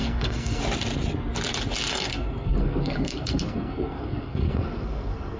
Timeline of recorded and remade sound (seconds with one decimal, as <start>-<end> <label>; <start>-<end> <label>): 0.0-0.6 remade; 0.6-1.9 recorded; 1.9-5.4 remade